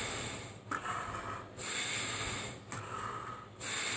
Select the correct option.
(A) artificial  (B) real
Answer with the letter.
B